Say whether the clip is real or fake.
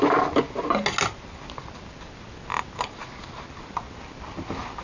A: real